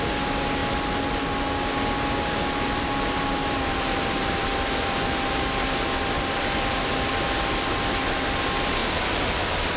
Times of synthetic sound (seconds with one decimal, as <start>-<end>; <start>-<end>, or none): none